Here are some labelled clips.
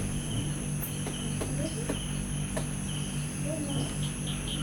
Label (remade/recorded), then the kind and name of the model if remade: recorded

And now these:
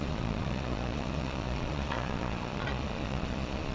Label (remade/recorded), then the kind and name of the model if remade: remade, vocoder, Vocos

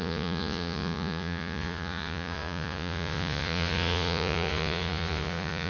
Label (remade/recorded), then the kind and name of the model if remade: remade, vocoder, Vocos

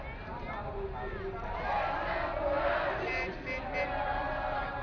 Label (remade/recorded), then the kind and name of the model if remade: recorded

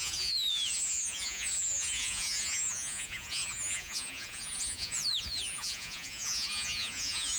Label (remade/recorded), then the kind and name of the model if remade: remade, vocoder, Vocos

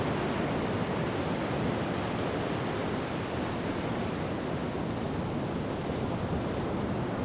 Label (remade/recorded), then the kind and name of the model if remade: recorded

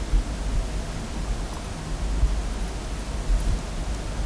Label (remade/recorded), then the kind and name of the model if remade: recorded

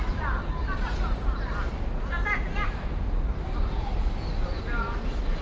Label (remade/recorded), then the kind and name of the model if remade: recorded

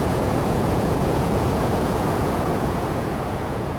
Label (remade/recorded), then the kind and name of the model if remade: remade, vocoder, Vocos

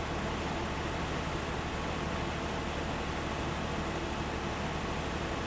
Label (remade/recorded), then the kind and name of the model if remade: recorded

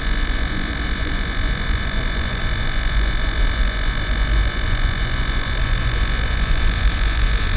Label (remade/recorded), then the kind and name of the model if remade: remade, vocoder, Vocos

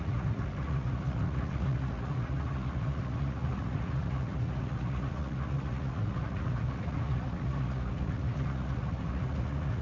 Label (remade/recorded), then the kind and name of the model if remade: remade, vocoder, Vocos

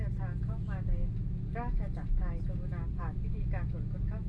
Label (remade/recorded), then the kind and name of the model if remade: recorded